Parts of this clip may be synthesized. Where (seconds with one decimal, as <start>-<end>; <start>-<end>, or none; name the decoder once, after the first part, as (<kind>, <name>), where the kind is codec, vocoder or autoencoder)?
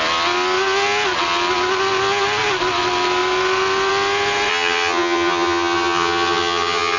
4.5-7.0 (vocoder, HiFi-GAN)